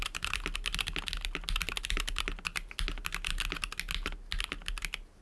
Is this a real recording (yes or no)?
yes